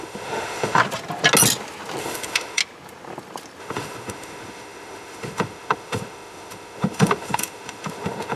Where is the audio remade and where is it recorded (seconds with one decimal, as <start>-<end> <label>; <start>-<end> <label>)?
0.0-0.8 remade; 0.8-2.0 recorded; 2.0-2.6 remade; 2.6-3.6 recorded; 3.6-8.4 remade